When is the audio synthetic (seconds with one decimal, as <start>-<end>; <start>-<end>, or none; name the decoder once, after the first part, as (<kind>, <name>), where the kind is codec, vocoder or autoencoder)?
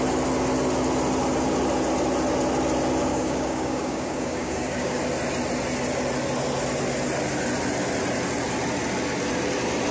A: 3.1-5.0 (codec, DAC)